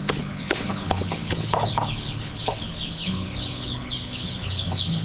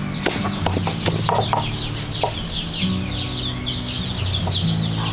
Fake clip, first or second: first